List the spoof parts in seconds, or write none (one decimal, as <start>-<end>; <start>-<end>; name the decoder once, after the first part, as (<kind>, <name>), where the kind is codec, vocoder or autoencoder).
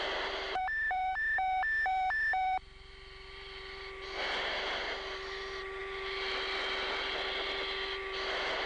none